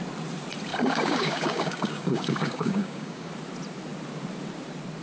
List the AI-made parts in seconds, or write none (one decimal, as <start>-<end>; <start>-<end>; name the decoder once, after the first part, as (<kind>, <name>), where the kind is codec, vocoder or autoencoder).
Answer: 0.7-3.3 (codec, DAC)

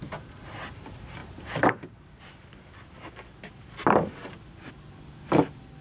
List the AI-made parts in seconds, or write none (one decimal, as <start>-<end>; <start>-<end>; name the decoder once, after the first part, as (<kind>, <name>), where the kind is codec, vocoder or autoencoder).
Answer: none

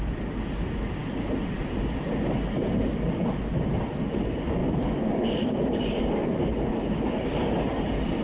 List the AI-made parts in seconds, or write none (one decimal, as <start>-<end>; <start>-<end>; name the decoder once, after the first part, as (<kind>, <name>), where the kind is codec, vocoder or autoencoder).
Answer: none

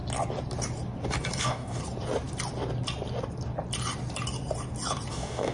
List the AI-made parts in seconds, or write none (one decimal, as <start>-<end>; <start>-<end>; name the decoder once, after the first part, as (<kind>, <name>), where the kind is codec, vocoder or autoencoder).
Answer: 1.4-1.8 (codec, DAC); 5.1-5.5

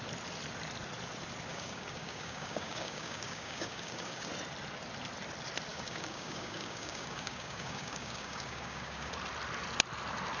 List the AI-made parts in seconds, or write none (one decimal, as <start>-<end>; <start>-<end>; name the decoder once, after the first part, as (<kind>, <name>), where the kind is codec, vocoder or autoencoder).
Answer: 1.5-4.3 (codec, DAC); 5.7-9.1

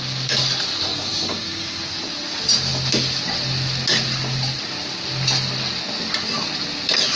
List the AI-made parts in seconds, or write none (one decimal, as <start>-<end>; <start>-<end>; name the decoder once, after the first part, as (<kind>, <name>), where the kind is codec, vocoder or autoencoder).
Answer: 0.9-1.8 (codec, DAC)

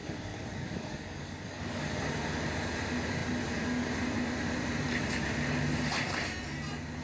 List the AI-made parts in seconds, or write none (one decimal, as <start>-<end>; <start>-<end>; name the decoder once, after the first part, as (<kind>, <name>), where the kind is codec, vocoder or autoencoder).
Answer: 0.0-2.0 (codec, DAC)